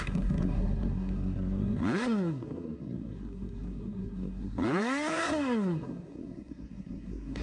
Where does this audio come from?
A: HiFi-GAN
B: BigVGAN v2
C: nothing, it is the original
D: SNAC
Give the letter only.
D